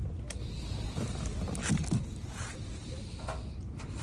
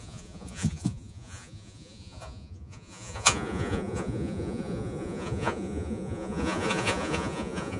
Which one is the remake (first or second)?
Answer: second